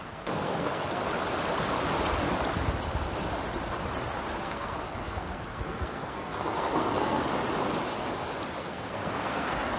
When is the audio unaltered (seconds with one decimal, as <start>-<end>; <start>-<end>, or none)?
1.0-4.4; 7.3-8.6